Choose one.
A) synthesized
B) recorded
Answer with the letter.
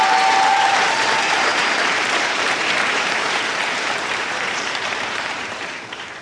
A